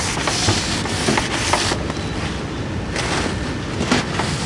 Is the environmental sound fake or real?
real